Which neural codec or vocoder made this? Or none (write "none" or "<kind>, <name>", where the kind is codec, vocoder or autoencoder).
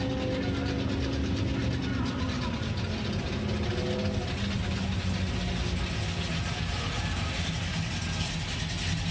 none